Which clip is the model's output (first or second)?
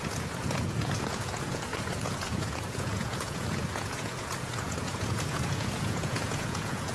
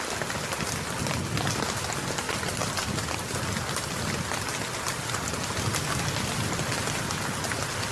first